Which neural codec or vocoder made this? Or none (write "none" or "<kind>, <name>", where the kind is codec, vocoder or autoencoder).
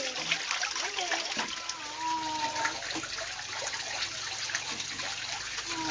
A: none